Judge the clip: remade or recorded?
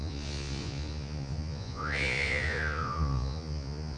remade